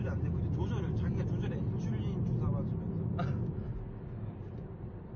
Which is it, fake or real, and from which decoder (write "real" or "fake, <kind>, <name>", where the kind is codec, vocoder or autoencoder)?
real